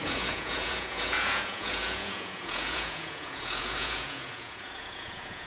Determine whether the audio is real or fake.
fake